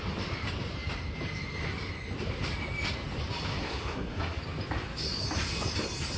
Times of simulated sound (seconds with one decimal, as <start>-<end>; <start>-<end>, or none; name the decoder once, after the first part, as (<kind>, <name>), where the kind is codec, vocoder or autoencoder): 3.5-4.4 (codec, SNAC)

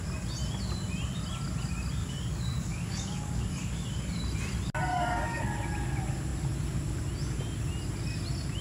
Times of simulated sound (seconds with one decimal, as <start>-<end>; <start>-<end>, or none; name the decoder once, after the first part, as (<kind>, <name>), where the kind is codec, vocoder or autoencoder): 2.0-3.9 (codec, DAC); 4.9-5.4

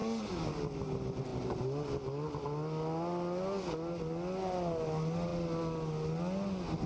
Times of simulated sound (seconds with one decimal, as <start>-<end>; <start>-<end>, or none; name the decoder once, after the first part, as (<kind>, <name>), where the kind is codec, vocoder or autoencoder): none